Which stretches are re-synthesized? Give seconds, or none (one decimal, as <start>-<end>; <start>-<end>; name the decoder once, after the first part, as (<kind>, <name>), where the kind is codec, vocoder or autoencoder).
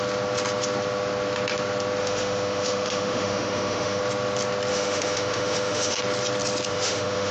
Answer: 2.0-4.0 (autoencoder, DAC-VAE); 4.7-6.0; 6.7-7.3